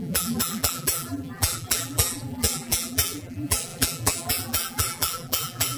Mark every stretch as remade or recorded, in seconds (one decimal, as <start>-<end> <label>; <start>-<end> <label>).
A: 0.0-5.8 remade